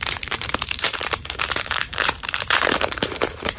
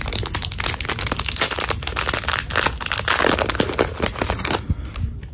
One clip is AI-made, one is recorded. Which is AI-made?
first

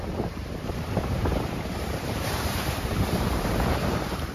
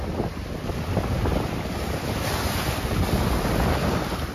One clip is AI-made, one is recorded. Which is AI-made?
first